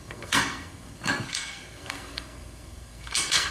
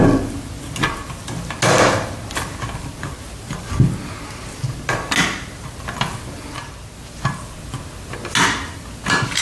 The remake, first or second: first